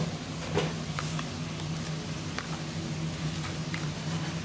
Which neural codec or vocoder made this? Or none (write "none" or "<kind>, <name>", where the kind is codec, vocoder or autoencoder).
none